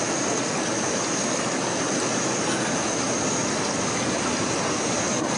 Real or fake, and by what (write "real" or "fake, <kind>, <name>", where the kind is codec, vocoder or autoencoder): real